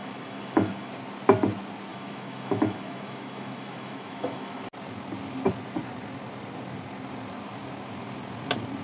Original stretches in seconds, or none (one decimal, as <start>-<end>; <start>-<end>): 0.9-1.9; 4.6-8.8